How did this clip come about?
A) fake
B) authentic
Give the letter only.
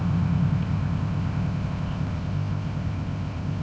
A